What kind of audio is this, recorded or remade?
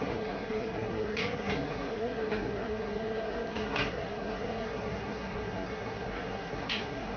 remade